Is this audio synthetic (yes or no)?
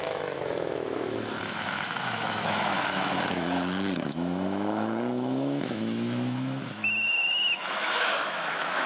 yes